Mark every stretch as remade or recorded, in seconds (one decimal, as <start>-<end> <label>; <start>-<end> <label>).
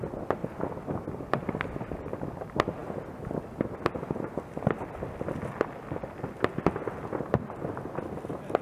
0.0-8.6 recorded